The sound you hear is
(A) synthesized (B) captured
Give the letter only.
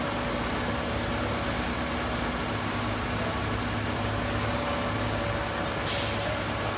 B